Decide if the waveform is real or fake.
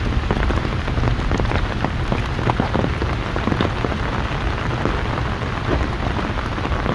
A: real